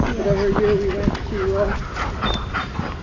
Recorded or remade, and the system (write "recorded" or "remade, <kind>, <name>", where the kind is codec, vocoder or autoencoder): recorded